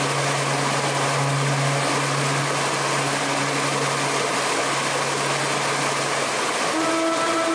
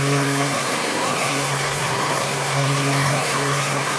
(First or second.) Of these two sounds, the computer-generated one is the second